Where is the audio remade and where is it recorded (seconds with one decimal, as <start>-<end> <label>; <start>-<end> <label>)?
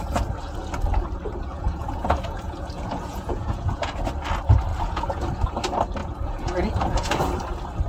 0.0-1.5 recorded; 1.5-3.9 remade; 3.9-4.7 recorded; 4.7-5.2 remade; 5.2-6.0 recorded; 6.0-7.2 remade; 7.2-7.9 recorded